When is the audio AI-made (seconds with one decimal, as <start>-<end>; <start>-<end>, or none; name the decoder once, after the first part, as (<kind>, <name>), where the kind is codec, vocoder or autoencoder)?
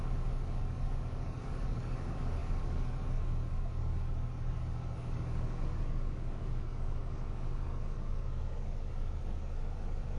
0.0-10.2 (codec, DAC)